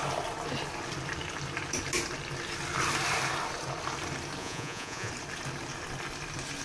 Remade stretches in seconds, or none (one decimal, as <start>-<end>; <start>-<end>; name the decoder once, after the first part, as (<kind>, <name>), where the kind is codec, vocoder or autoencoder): 4.4-5.1 (vocoder, Vocos)